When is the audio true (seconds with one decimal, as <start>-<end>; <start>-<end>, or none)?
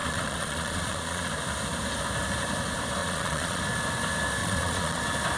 1.3-3.0; 3.6-4.4; 5.0-5.4